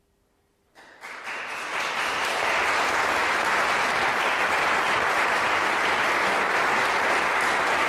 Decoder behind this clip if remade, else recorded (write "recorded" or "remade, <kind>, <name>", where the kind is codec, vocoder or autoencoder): recorded